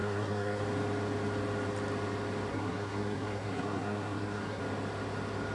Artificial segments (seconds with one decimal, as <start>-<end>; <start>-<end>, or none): 0.0-0.6; 2.5-4.6